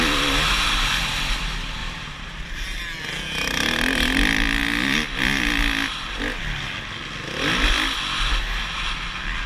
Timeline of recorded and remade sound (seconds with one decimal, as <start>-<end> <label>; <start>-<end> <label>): 0.0-1.8 recorded; 1.8-2.4 remade; 2.4-9.5 recorded